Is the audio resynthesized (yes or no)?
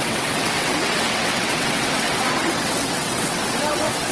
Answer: yes